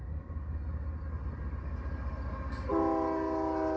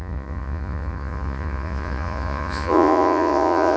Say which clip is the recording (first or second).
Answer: first